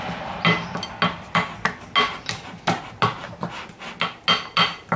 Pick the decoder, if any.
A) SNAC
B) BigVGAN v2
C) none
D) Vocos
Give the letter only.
C